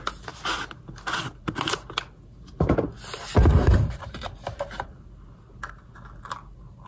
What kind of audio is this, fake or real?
real